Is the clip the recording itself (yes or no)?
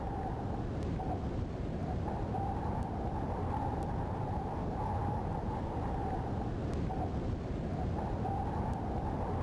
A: yes